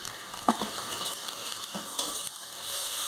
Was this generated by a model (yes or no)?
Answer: yes